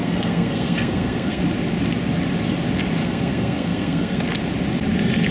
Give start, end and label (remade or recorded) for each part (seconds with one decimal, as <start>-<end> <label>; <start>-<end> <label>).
0.0-1.4 remade; 1.4-3.0 recorded; 3.0-4.2 remade; 4.2-5.3 recorded

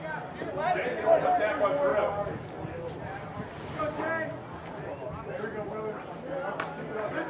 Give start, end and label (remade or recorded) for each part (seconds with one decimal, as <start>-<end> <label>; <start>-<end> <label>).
0.0-7.3 recorded

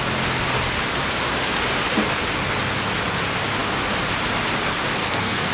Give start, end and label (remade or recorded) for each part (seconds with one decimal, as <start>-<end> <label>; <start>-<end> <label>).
0.0-5.0 recorded; 5.0-5.5 remade

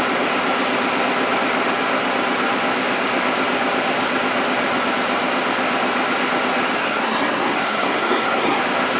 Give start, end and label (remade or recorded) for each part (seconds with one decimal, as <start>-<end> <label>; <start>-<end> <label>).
0.0-6.8 recorded; 6.8-8.6 remade; 8.6-9.0 recorded

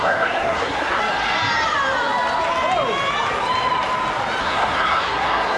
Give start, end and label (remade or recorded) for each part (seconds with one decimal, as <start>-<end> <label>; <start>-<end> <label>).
0.0-1.0 remade; 1.0-4.4 recorded; 4.4-5.6 remade

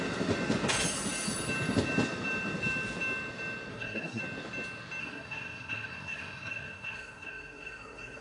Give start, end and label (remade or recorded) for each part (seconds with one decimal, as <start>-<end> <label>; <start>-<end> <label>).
0.0-3.7 recorded; 3.7-4.2 remade; 4.2-5.0 recorded; 5.0-8.2 remade

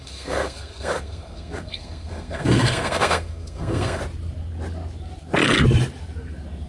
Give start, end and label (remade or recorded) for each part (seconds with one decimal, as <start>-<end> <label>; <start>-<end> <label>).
0.0-4.0 remade; 4.0-6.7 recorded